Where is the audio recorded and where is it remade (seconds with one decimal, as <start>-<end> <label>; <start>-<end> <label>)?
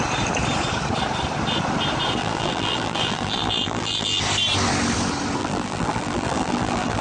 0.0-2.2 recorded; 2.2-4.2 remade; 4.2-5.4 recorded; 5.4-7.0 remade